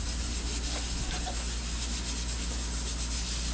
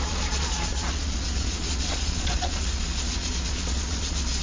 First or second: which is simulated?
second